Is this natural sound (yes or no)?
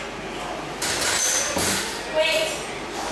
no